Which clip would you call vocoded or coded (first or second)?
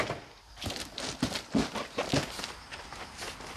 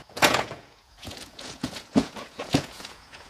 second